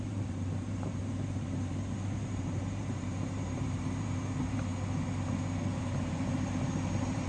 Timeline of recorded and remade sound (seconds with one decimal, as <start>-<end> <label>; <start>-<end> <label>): 0.0-4.7 remade; 4.7-5.8 recorded; 5.8-7.3 remade